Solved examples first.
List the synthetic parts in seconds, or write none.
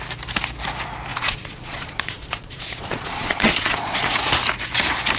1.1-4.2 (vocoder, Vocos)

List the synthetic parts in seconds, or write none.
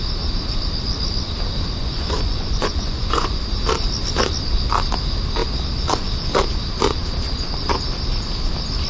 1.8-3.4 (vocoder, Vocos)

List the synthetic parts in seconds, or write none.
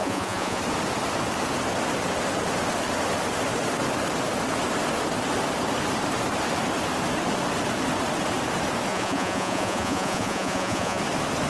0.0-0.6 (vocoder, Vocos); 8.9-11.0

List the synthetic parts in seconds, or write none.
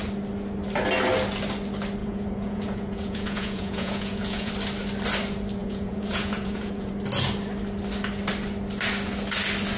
2.0-4.5 (vocoder, Vocos); 5.6-6.9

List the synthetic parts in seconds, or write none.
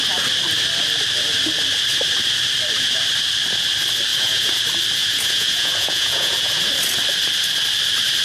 4.1-4.6 (vocoder, Vocos); 5.0-6.6